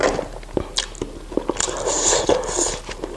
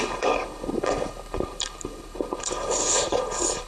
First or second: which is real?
first